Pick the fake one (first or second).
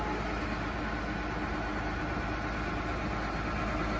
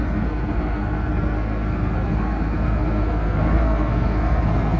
second